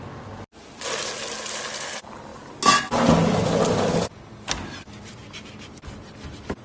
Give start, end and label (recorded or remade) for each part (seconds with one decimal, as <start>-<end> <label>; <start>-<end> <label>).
0.0-6.6 recorded